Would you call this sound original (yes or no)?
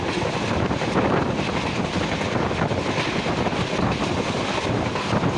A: yes